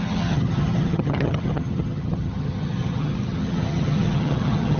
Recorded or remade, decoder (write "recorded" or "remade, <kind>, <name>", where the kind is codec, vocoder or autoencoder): remade, vocoder, HiFi-GAN